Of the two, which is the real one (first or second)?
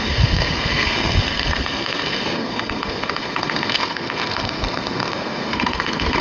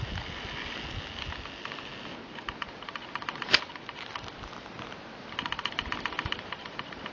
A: second